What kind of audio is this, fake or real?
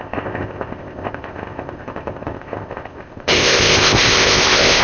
fake